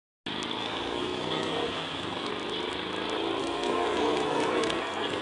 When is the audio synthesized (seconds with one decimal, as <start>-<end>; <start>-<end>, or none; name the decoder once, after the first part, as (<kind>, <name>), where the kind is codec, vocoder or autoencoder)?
0.6-2.3 (codec, SNAC); 3.4-5.2